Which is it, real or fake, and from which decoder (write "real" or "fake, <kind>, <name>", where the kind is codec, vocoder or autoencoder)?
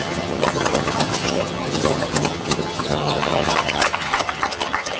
fake, vocoder, HiFi-GAN